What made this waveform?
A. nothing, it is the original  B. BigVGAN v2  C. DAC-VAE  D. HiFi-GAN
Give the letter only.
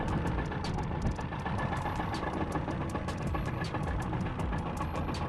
A